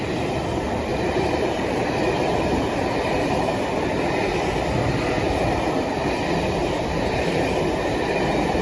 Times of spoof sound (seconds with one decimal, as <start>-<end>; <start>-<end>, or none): 0.9-2.1; 6.6-7.7